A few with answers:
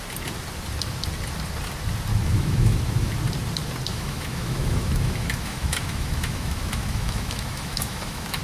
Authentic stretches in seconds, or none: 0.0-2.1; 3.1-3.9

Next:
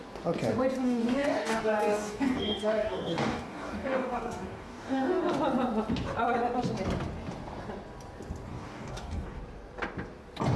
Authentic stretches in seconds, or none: 0.0-0.8; 5.2-8.5; 9.4-10.6

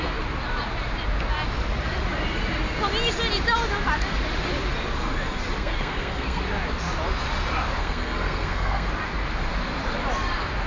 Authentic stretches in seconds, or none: 0.0-5.6; 6.4-7.8; 8.9-10.7

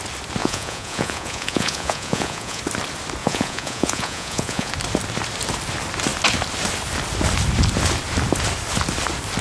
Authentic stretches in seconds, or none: 0.0-0.4; 2.6-3.2; 4.7-9.4

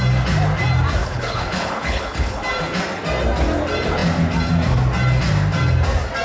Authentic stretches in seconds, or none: 0.0-1.0; 2.4-6.2

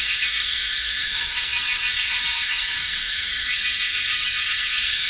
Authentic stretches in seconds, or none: none